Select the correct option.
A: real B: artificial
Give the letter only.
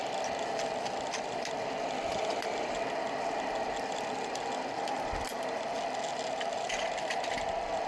B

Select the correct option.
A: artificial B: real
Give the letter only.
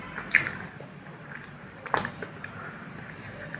B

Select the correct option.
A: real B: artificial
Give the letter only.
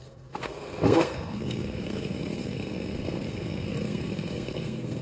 B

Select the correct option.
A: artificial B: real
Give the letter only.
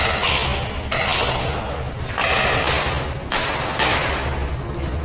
B